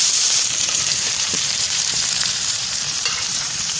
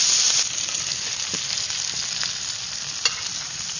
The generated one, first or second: first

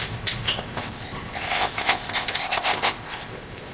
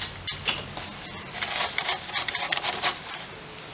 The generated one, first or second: first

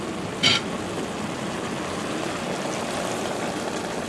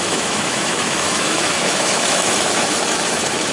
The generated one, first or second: second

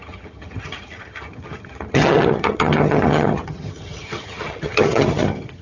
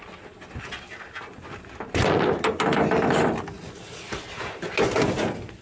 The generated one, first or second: first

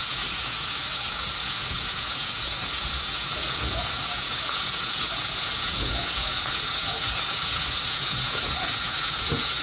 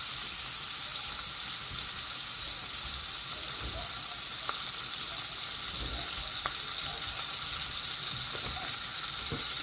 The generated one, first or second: first